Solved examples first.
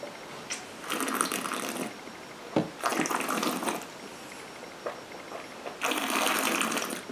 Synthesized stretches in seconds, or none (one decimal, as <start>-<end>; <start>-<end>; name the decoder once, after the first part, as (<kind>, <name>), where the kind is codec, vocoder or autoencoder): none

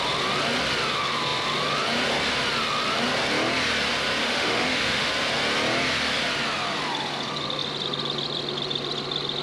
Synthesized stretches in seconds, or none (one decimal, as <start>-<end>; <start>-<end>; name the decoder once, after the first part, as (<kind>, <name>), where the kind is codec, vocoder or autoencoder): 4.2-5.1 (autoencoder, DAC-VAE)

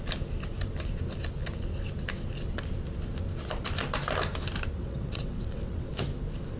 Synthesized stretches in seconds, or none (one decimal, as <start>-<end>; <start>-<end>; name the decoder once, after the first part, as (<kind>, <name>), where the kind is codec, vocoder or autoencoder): 4.8-5.9 (vocoder, WaveNeXt)

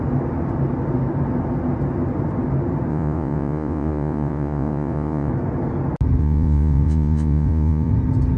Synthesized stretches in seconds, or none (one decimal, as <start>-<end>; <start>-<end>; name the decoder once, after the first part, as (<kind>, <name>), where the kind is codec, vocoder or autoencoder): 2.9-5.3 (vocoder, Vocos); 6.2-7.9

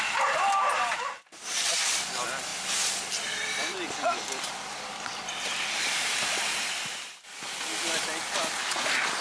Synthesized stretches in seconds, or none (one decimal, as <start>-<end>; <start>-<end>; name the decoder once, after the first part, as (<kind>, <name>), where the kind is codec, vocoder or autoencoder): 0.0-9.2 (vocoder, BigVGAN v2)

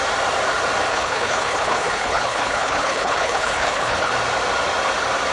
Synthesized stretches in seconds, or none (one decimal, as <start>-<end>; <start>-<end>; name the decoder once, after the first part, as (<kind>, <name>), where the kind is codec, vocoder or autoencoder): 0.9-4.1 (codec, HILCodec)